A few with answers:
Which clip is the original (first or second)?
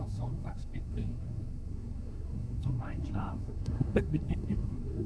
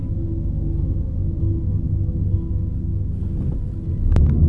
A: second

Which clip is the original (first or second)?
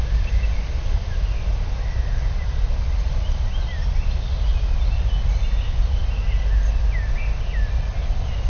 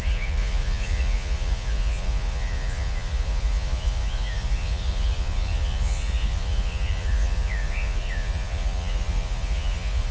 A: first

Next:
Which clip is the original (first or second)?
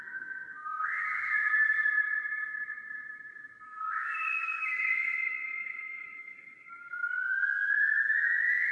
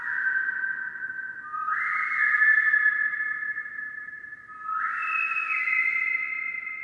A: second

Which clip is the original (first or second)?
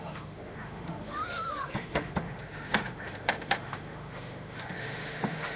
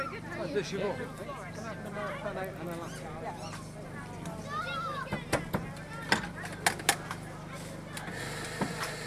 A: second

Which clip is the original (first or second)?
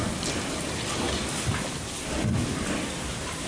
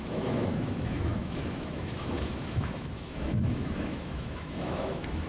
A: first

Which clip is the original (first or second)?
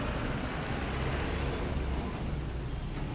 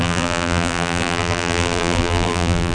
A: first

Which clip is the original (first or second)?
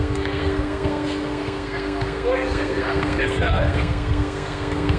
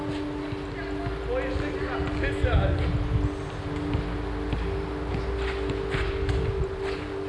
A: second